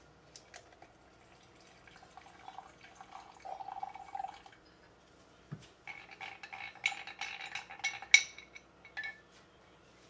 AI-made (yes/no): no